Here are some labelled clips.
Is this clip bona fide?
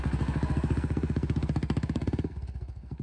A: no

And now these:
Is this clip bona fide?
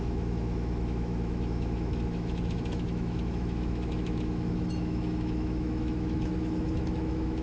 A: no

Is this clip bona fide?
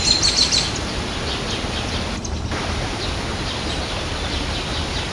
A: yes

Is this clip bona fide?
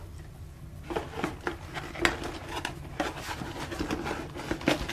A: yes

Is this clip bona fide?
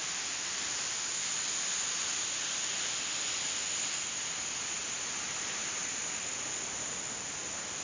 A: yes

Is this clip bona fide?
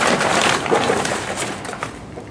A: no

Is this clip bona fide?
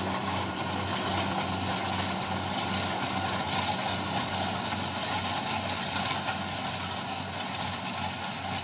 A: yes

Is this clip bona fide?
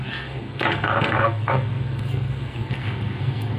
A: no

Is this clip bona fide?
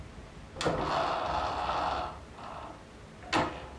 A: yes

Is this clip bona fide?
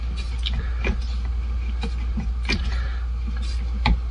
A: yes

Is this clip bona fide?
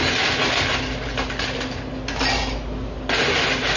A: yes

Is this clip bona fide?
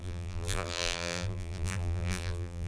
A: no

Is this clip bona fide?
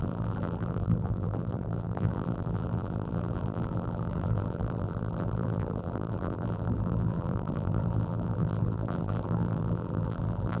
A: no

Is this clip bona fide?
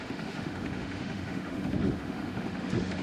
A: no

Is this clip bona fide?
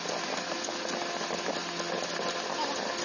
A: yes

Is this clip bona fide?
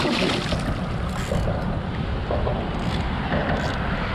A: yes